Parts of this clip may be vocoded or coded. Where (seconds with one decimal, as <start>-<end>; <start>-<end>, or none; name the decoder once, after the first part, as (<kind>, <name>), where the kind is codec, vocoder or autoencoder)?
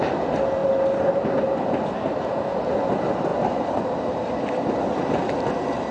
3.3-4.8 (vocoder, BigVGAN v2)